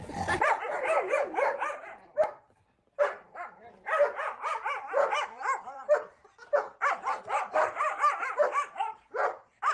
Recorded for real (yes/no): no